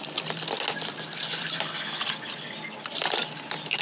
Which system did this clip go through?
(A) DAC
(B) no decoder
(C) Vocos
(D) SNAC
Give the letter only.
B